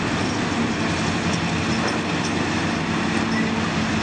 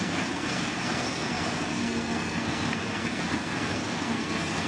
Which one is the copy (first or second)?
second